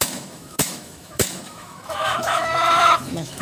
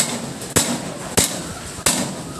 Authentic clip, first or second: second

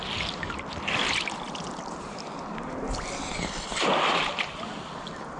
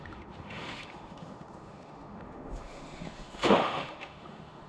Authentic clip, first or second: first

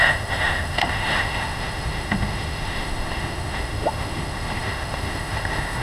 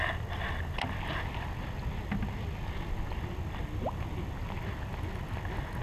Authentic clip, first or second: second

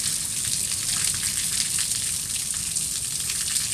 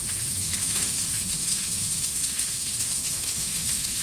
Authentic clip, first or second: first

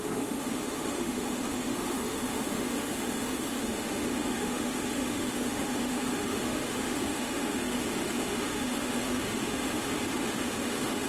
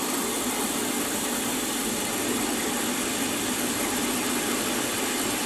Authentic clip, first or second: second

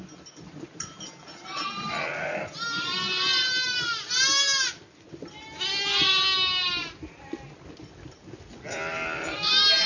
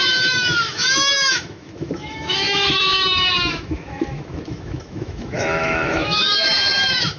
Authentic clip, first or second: first